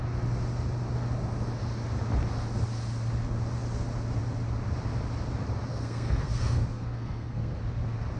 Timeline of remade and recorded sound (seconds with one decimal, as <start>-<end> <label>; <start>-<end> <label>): 0.0-5.7 recorded; 5.7-7.6 remade; 7.6-8.2 recorded